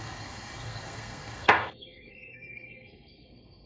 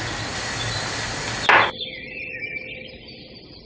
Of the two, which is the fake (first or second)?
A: first